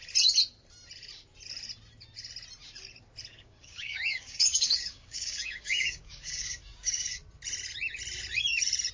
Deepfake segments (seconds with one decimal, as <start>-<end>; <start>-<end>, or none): 3.3-7.2